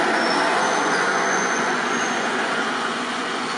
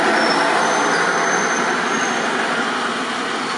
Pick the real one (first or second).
second